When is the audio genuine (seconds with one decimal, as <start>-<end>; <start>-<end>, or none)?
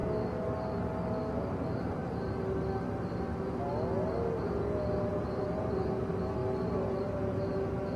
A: 0.0-1.4; 2.0-5.1; 6.4-7.0